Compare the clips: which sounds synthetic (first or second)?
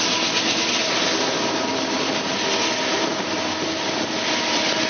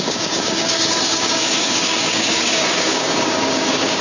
second